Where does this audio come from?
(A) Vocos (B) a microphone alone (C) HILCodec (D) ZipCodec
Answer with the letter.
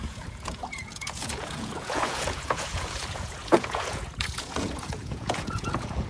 A